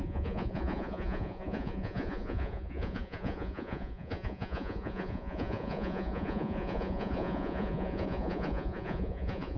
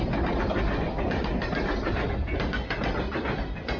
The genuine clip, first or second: second